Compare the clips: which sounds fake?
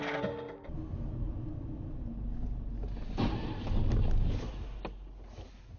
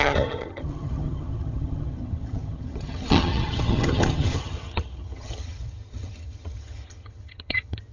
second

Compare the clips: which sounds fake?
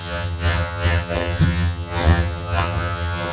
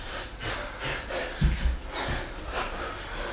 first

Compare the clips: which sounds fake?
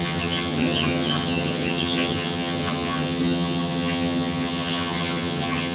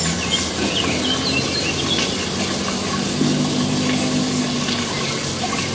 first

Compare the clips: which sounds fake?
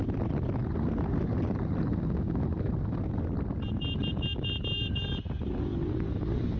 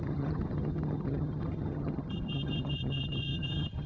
second